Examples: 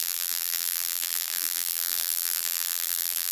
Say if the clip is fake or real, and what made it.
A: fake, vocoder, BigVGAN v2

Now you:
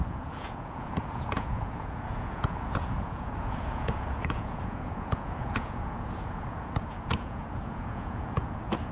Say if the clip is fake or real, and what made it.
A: fake, vocoder, Vocos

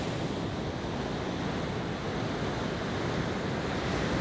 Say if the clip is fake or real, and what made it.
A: real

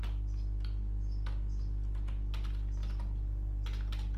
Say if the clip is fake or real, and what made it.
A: real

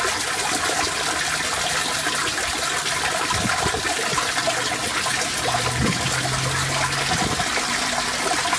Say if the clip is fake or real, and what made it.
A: real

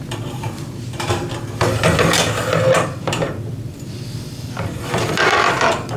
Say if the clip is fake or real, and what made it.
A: fake, vocoder, BigVGAN v2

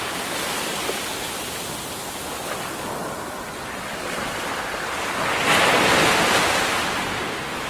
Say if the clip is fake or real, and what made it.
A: real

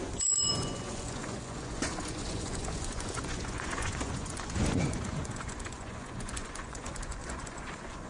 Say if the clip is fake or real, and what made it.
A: fake, vocoder, Vocos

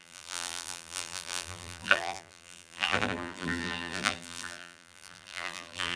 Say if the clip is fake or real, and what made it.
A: fake, vocoder, BigVGAN v2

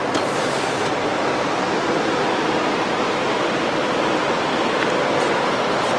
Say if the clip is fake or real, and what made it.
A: real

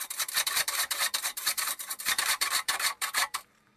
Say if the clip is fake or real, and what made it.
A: fake, vocoder, BigVGAN v2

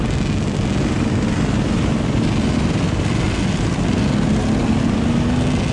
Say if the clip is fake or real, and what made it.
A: real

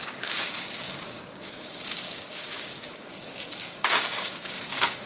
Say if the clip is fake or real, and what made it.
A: fake, codec, DAC